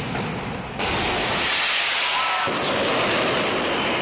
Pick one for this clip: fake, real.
real